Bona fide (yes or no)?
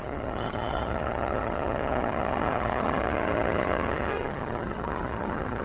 no